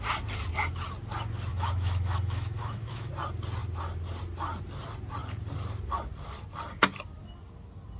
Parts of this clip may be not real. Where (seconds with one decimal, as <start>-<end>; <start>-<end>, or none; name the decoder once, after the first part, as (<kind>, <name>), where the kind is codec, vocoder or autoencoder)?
1.5-3.1 (autoencoder, DAC-VAE)